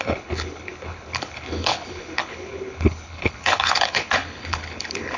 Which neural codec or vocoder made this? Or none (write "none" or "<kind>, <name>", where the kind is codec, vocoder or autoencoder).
codec, HILCodec